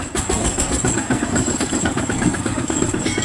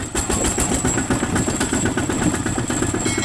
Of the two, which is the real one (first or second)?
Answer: second